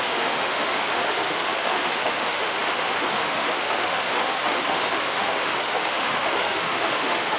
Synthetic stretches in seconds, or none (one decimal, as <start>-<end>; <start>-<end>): 0.0-7.4